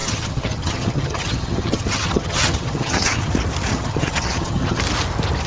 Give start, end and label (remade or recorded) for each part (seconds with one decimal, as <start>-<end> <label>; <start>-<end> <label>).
0.0-3.3 remade; 3.3-3.7 recorded; 3.7-4.8 remade; 4.8-5.5 recorded